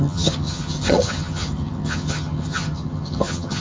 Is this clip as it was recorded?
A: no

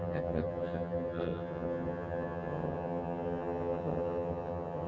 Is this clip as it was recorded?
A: no